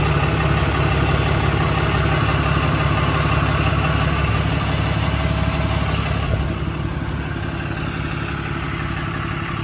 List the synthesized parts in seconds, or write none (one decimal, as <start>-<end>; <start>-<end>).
none